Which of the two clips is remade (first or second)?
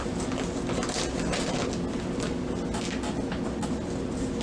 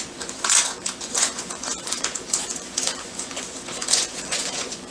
second